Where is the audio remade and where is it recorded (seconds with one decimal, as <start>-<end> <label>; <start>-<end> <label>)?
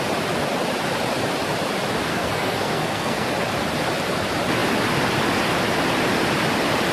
0.0-2.1 recorded; 2.1-3.3 remade; 3.3-6.9 recorded